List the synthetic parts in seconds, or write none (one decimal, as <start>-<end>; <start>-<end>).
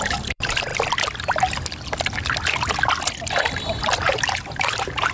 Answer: 0.0-0.7; 3.8-5.1